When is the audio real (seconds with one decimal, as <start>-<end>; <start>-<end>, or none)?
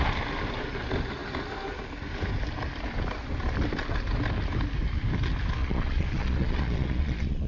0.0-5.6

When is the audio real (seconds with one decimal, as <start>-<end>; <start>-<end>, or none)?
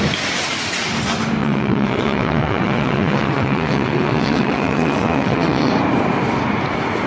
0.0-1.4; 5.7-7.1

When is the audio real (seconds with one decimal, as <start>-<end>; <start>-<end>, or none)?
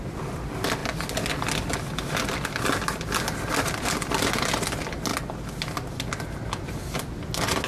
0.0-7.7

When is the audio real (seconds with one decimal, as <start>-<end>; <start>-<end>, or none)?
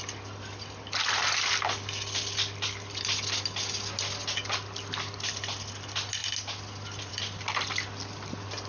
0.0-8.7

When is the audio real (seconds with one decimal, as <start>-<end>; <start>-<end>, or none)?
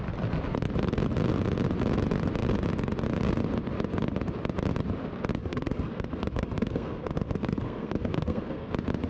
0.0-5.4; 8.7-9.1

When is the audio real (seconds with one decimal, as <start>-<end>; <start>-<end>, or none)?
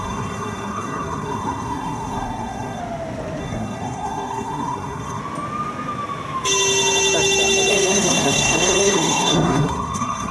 2.8-3.4; 5.2-7.7